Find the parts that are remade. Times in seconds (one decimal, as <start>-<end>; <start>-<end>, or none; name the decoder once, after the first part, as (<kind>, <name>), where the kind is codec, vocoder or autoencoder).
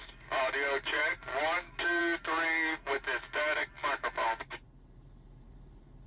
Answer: none